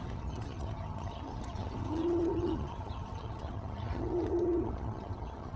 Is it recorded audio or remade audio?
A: remade